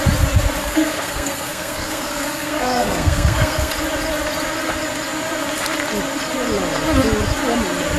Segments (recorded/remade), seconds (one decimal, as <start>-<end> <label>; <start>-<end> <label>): 0.0-0.6 recorded; 0.6-3.7 remade; 3.7-8.0 recorded

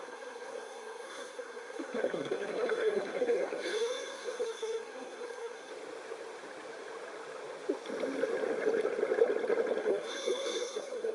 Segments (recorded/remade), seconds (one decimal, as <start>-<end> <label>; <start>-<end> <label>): 0.0-5.7 remade; 5.7-9.8 recorded; 9.8-11.1 remade

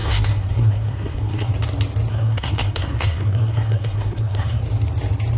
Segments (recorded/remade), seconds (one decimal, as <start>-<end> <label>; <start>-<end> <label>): 0.0-1.5 remade; 1.5-2.1 recorded; 2.1-4.6 remade; 4.6-5.4 recorded

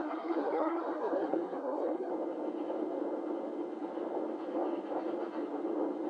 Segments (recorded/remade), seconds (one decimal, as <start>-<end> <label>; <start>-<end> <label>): 0.0-2.1 remade; 2.1-6.1 recorded

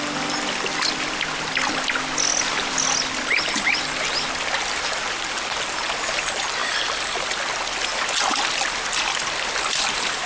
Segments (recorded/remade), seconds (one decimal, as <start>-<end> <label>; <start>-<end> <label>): 0.0-10.3 recorded

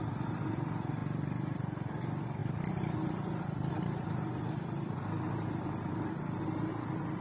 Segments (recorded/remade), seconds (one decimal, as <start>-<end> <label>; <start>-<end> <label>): 0.0-1.0 remade; 1.0-1.9 recorded; 1.9-7.2 remade

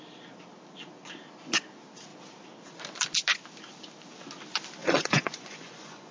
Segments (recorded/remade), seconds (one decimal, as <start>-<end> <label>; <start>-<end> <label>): 0.0-4.8 recorded; 4.8-6.1 remade